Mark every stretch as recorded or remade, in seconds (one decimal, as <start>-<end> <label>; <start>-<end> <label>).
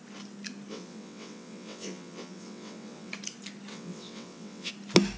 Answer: 0.0-0.7 recorded; 0.7-3.1 remade; 3.1-3.7 recorded; 3.7-4.7 remade; 4.7-5.2 recorded